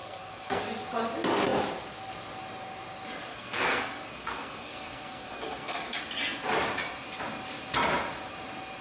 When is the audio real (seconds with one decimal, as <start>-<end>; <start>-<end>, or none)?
0.6-3.3; 6.0-8.8